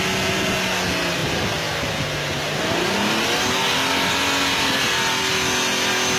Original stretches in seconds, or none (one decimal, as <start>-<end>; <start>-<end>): 0.0-6.2